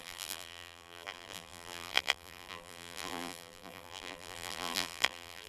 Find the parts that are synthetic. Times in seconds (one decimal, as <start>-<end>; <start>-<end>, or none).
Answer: 0.0-5.5